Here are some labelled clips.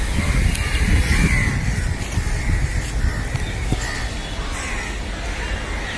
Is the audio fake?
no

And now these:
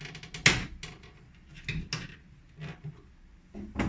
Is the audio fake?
no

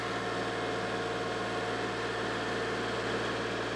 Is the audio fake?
no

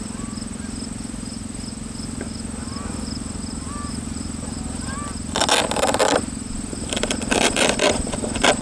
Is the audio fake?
no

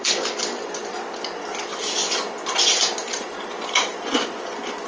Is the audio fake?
no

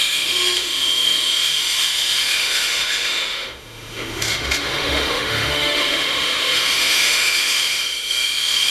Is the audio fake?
yes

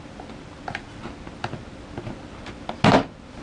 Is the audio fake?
no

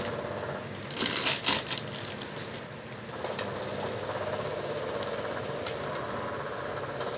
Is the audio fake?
no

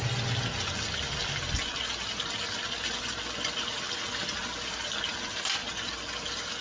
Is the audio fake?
no